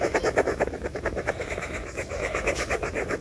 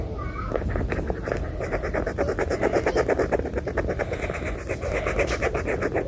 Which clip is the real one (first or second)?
second